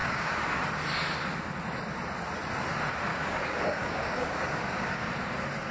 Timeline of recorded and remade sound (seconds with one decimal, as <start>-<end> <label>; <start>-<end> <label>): 0.0-0.6 remade; 0.6-3.1 recorded; 3.1-5.1 remade; 5.1-5.7 recorded